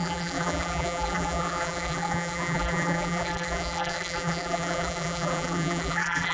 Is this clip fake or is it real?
fake